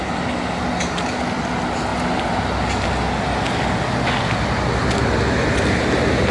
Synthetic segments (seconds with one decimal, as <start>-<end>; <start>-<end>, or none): none